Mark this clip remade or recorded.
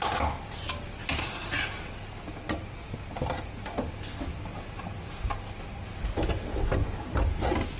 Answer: recorded